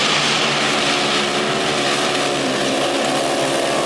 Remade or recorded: recorded